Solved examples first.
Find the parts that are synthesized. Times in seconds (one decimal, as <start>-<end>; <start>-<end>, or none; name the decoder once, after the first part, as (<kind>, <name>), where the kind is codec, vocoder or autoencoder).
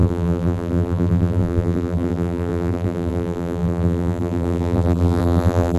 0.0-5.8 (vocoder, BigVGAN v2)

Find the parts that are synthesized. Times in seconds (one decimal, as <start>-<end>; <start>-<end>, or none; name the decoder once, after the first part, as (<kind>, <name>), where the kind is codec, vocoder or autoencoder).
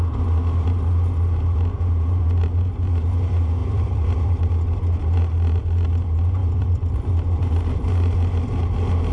3.6-4.5 (vocoder, BigVGAN v2); 6.4-7.4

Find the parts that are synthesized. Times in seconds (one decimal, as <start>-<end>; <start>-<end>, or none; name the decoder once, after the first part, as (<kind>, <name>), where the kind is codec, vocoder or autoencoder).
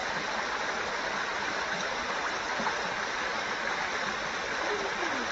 0.0-0.9 (vocoder, BigVGAN v2); 1.3-2.7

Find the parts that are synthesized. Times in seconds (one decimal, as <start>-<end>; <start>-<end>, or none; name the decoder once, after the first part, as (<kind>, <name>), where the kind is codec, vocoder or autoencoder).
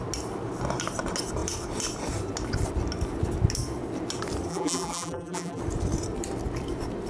4.5-5.6 (vocoder, BigVGAN v2)